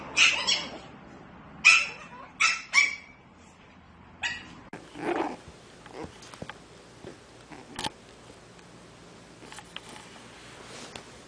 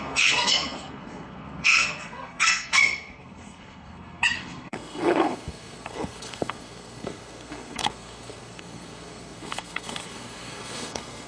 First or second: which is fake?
second